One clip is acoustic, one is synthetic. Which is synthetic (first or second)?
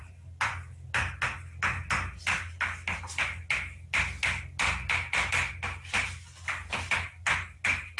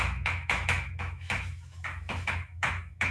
second